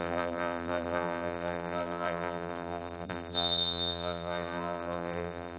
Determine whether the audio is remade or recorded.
remade